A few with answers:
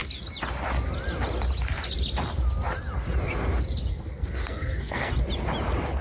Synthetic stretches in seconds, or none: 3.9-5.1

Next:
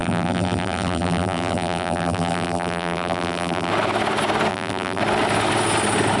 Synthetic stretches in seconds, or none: 0.0-3.7; 4.5-5.0

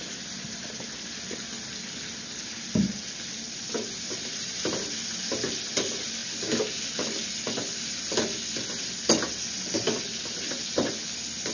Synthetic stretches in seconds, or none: none

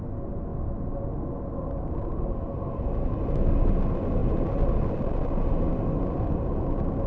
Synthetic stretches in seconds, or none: none